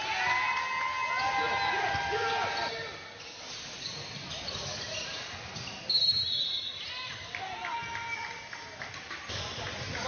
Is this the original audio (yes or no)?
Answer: yes